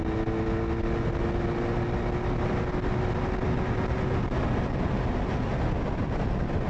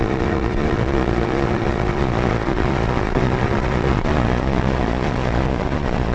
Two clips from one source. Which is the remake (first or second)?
second